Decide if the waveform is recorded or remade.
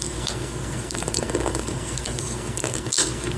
remade